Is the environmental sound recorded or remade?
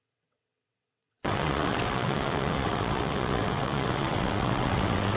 remade